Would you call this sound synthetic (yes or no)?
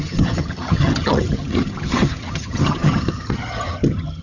yes